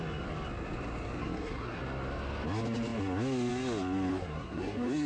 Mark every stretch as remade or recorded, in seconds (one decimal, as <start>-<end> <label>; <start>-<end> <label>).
0.0-1.2 recorded; 1.2-1.8 remade; 1.8-4.1 recorded; 4.1-5.1 remade